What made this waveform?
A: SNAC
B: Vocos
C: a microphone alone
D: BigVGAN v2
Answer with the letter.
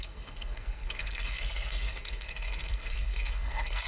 A